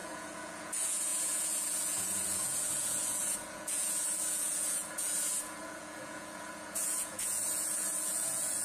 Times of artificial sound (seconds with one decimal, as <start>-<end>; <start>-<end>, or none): 0.0-8.6